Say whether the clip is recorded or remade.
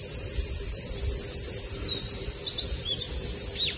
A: remade